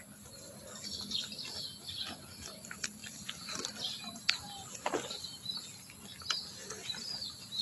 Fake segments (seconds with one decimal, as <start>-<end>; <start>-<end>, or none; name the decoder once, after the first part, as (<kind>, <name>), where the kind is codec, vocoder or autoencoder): none